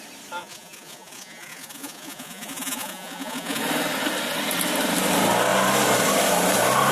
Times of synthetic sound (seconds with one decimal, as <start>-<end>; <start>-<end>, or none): 0.4-3.6